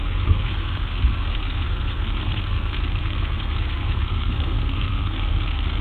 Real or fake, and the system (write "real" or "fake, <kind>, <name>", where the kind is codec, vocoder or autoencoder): fake, codec, SNAC